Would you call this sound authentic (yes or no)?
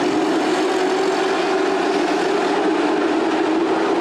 yes